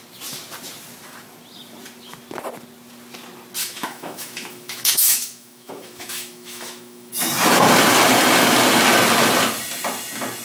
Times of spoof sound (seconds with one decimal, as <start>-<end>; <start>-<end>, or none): 3.6-7.1